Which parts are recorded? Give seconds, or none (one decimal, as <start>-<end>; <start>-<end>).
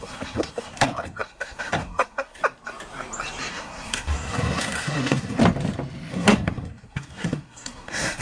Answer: 2.4-3.5; 5.4-6.1